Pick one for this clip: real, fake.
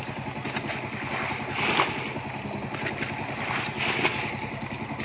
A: real